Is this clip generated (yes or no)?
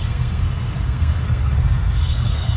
yes